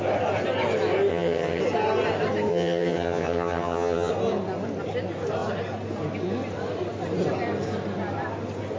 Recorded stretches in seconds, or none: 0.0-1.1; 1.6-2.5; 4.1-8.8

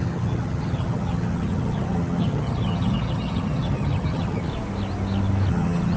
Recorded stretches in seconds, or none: 4.5-5.5